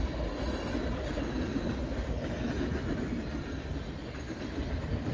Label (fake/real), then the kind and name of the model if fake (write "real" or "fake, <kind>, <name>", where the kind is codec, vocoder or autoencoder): real